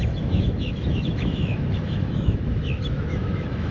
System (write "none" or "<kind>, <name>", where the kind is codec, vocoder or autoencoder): autoencoder, DAC-VAE